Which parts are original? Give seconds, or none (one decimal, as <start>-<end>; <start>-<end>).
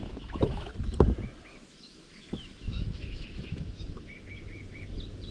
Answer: 0.7-1.5; 4.1-5.3